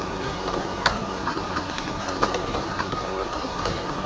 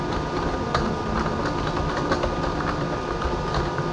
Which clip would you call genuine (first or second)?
second